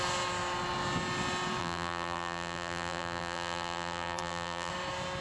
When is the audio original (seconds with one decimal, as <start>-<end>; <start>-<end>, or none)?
0.0-1.6; 4.7-5.2